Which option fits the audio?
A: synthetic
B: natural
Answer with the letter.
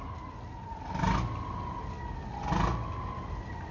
B